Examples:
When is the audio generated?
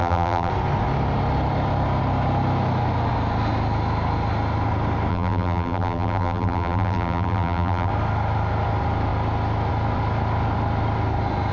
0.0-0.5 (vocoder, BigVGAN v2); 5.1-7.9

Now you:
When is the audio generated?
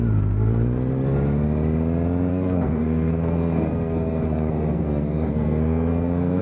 2.3-6.4 (codec, SNAC)